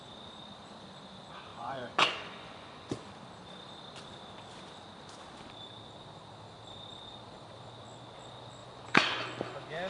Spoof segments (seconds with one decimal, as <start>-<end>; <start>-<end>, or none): 1.5-3.1; 8.6-9.2